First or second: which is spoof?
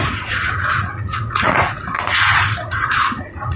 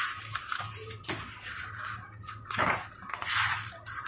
first